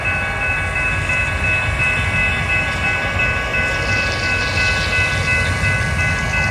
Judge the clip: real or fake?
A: real